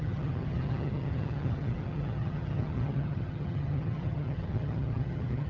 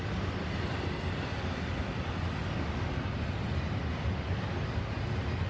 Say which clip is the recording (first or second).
second